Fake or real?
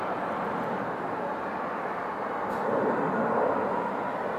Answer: real